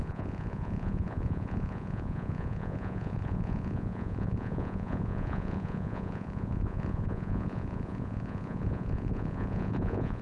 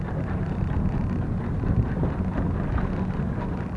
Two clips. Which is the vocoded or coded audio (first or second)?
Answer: first